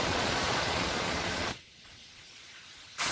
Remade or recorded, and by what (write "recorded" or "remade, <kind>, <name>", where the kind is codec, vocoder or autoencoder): remade, vocoder, Vocos